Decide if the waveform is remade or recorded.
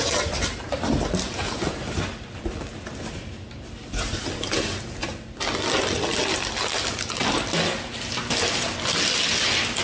recorded